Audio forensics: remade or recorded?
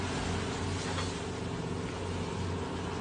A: recorded